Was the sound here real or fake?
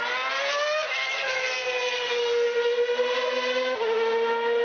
real